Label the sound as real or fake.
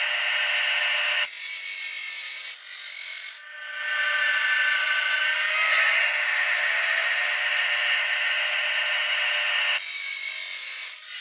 real